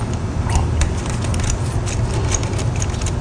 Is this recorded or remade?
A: recorded